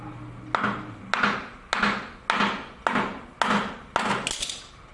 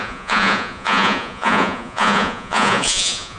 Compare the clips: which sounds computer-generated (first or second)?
second